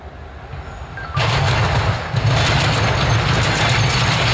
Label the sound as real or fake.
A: real